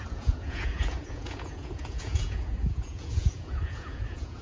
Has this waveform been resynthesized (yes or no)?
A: yes